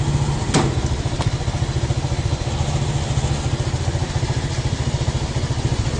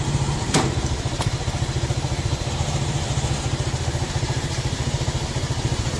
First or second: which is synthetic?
second